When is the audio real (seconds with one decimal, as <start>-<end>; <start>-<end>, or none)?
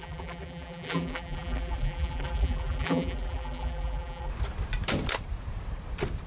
4.3-6.3